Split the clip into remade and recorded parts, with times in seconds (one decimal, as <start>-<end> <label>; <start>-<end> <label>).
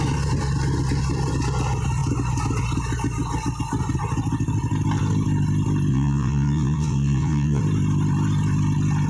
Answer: 0.0-5.9 recorded; 5.9-7.6 remade; 7.6-9.1 recorded